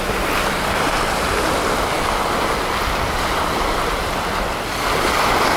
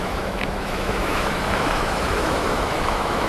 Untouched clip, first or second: first